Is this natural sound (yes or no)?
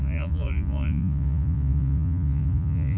no